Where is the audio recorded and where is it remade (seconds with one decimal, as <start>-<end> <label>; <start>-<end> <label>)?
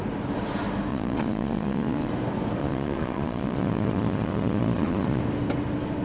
0.0-0.9 recorded; 0.9-2.1 remade; 2.1-2.6 recorded; 2.6-5.2 remade; 5.2-6.0 recorded